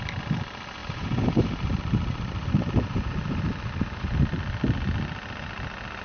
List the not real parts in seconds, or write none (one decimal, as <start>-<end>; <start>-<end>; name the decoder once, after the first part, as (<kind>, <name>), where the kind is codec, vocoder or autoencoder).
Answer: 0.8-4.2 (vocoder, BigVGAN v2)